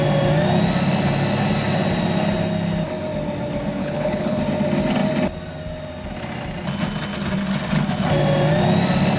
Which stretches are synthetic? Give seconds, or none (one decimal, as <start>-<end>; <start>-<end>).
3.8-4.4